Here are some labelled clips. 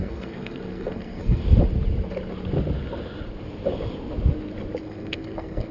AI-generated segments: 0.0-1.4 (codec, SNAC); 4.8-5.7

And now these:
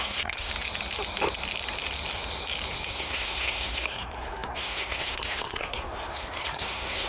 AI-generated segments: 0.0-0.5 (codec, SNAC); 2.9-7.1